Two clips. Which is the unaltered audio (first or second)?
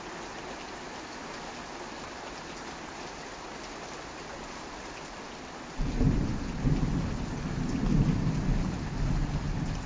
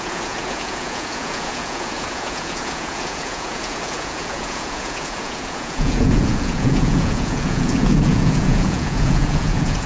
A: first